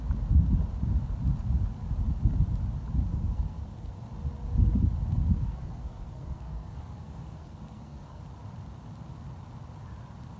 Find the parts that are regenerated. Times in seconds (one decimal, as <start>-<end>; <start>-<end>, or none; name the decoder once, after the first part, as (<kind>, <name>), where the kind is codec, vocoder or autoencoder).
3.1-4.0 (codec, SNAC); 5.1-8.2